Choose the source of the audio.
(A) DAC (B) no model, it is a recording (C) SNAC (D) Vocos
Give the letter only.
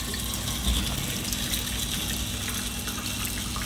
B